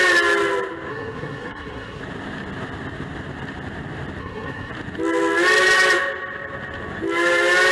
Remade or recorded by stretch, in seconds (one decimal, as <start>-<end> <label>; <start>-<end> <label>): 0.0-0.9 recorded; 0.9-2.0 remade; 2.0-4.2 recorded; 4.2-4.7 remade; 4.7-7.7 recorded